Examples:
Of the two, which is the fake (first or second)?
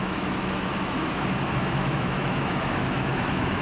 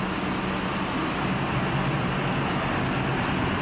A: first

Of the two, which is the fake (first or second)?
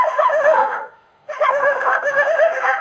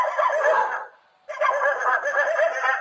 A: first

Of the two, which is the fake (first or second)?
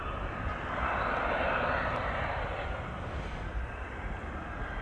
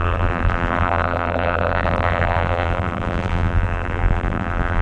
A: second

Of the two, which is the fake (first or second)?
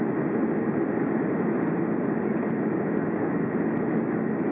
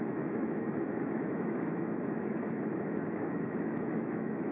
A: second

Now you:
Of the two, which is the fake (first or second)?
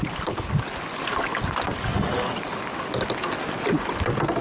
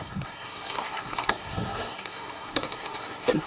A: second